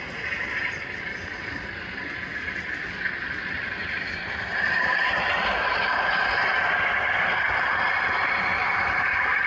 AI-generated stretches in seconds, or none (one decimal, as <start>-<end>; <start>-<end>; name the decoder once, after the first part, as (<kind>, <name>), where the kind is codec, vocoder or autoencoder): 3.8-6.6 (vocoder, BigVGAN v2); 8.5-9.5